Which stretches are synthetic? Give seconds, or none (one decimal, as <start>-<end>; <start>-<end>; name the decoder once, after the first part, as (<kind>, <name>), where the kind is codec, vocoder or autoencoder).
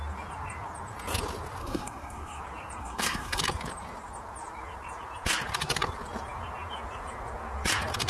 1.6-2.4 (codec, SNAC); 2.8-3.4